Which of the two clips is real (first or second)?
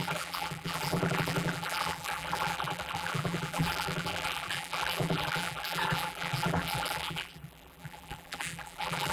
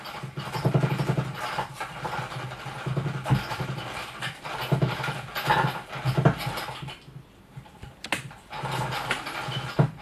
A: second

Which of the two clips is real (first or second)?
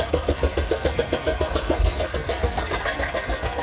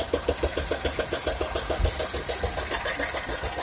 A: second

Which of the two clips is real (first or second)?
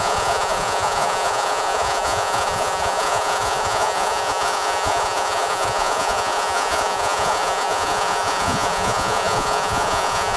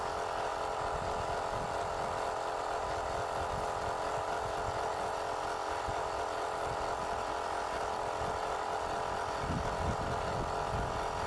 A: second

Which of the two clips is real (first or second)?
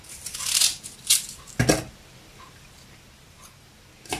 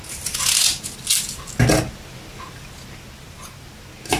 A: second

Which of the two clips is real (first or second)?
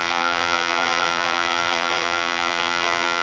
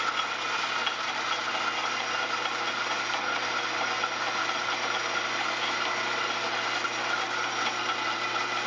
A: second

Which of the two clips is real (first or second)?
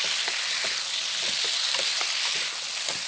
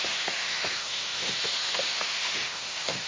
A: first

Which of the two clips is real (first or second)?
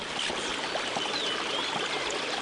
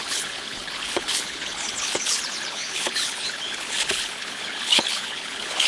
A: first